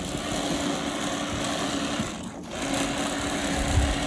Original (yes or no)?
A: yes